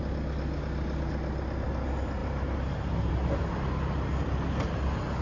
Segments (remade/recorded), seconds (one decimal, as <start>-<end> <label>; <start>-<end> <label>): 0.0-2.2 recorded; 2.2-3.1 remade; 3.1-5.2 recorded

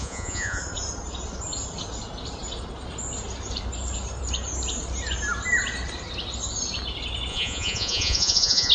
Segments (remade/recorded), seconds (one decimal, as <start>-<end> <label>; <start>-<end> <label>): 0.0-0.6 remade; 0.6-7.3 recorded; 7.3-8.7 remade

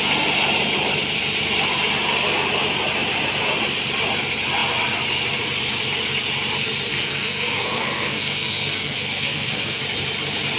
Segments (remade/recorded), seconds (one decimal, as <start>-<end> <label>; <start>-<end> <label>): 0.0-6.9 recorded; 6.9-9.8 remade; 9.8-10.6 recorded

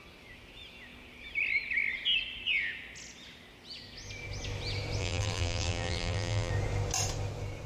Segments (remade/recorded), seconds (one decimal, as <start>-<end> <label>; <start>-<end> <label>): 0.0-5.0 recorded; 5.0-6.5 remade; 6.5-7.7 recorded